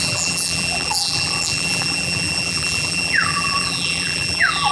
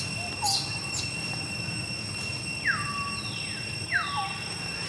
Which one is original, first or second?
second